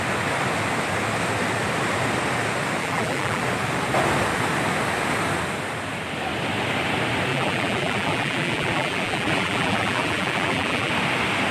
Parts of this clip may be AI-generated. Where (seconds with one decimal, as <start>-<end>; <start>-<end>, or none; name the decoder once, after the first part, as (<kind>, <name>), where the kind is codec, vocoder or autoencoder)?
2.8-3.4 (vocoder, BigVGAN v2); 7.3-10.9